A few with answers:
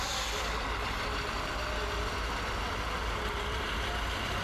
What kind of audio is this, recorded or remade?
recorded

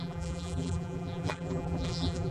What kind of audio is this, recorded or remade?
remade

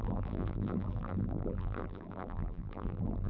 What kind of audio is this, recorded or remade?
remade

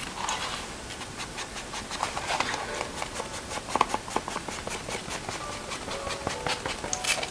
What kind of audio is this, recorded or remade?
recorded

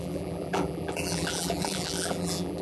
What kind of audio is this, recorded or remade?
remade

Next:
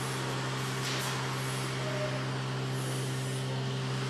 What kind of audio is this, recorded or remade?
recorded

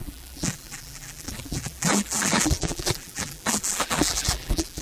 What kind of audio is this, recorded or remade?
remade